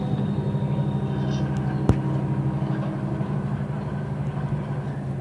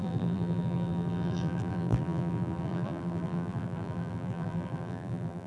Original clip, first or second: first